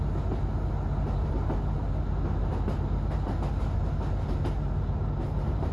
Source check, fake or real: real